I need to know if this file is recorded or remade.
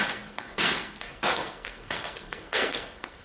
remade